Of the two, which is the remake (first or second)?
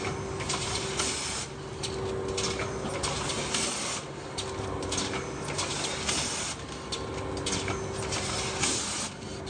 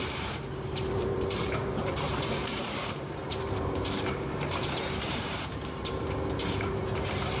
second